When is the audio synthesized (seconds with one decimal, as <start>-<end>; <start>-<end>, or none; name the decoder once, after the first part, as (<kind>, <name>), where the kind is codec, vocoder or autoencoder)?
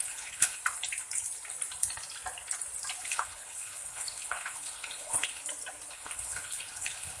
0.0-0.6 (codec, HILCodec); 3.0-5.4; 5.9-7.2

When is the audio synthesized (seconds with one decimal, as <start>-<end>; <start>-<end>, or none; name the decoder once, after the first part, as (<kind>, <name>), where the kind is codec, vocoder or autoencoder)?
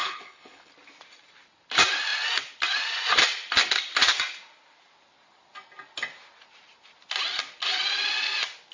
0.0-0.7 (codec, HILCodec)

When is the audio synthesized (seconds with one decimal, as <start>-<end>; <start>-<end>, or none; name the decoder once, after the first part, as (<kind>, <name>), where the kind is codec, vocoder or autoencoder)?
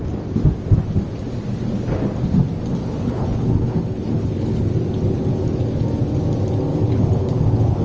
2.8-4.7 (codec, HILCodec); 6.7-7.8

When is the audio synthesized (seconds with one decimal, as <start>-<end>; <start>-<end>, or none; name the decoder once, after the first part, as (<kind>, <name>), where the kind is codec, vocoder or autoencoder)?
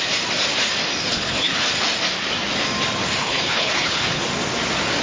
1.1-1.7 (codec, HILCodec); 3.2-4.2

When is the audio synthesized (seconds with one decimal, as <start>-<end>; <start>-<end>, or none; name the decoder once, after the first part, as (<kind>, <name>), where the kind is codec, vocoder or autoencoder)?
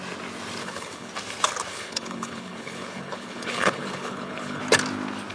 0.6-1.1 (codec, HILCodec); 1.7-4.6